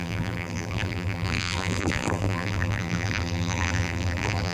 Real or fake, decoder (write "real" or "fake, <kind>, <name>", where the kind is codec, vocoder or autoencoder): fake, vocoder, BigVGAN v2